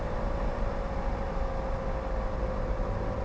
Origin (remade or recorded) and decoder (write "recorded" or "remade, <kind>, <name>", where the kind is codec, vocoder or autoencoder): recorded